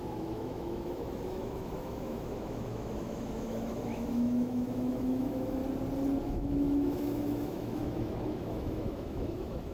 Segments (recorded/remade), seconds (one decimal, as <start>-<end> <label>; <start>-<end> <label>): 0.0-5.6 remade; 5.6-6.2 recorded; 6.2-9.7 remade

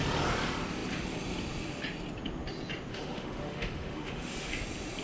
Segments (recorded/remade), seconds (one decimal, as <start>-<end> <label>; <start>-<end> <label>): 0.0-2.9 recorded; 2.9-4.5 remade; 4.5-5.0 recorded